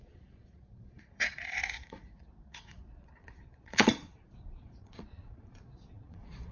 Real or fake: fake